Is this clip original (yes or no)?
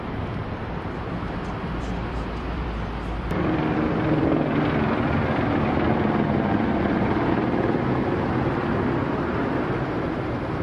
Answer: no